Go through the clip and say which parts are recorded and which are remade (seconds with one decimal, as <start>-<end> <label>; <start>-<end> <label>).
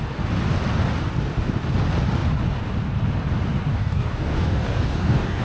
0.0-3.7 recorded; 3.7-5.4 remade